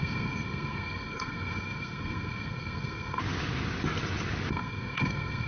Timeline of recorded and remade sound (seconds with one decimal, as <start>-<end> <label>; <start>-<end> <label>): 0.0-3.2 remade; 3.2-4.5 recorded; 4.5-5.5 remade